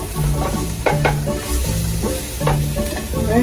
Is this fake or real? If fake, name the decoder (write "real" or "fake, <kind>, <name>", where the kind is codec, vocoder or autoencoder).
real